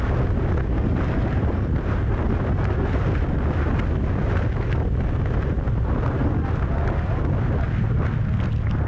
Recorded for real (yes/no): yes